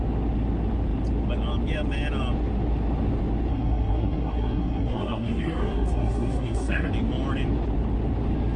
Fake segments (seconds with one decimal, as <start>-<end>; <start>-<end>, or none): 3.5-6.9